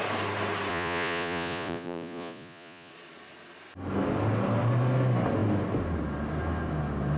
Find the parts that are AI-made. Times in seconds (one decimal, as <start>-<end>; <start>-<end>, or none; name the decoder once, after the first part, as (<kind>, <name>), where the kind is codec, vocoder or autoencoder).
0.7-2.9 (vocoder, Vocos)